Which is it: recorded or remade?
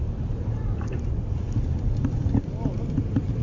recorded